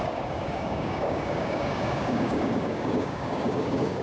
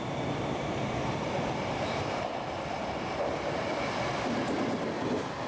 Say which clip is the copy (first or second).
first